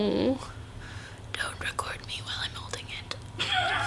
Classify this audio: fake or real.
real